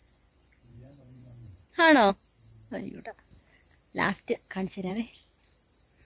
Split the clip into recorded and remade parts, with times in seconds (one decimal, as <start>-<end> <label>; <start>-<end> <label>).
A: 0.0-2.1 remade; 2.1-6.0 recorded